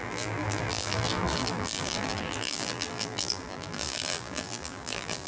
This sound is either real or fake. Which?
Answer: fake